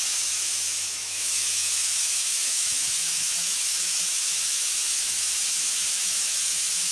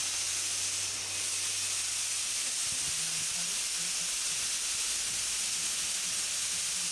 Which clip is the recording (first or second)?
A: second